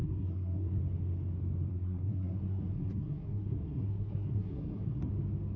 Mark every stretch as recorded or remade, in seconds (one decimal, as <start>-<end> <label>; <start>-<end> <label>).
0.0-0.8 remade; 0.8-1.7 recorded; 1.7-5.1 remade; 5.1-5.6 recorded